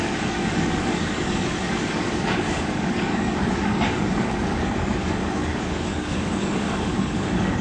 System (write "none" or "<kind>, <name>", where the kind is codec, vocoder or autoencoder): codec, DAC